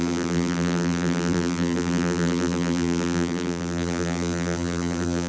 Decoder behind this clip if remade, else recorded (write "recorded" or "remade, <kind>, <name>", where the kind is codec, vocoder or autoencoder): remade, vocoder, BigVGAN v2